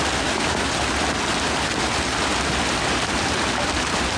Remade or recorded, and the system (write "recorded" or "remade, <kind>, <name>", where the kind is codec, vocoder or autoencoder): recorded